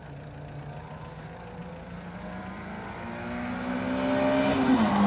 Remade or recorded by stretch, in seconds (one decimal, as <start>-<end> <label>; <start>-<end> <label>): 0.0-5.1 recorded